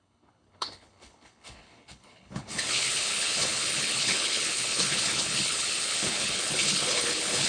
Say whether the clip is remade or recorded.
remade